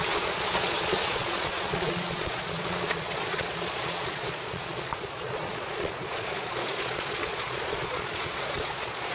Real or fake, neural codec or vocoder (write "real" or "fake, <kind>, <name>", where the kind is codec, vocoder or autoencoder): fake, vocoder, Vocos